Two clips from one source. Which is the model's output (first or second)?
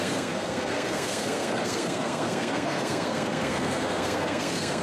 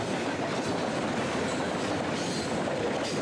first